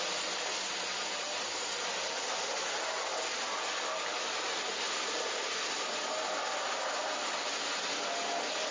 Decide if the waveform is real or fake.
real